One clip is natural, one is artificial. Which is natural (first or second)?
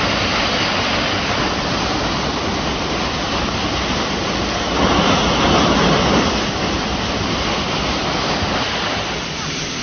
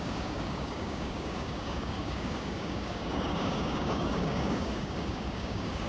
first